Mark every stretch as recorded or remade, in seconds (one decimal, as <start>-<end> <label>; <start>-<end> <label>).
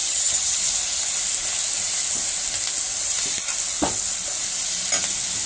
0.0-0.6 remade; 0.6-5.5 recorded